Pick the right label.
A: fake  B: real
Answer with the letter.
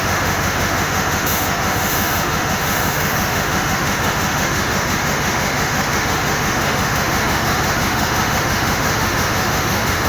A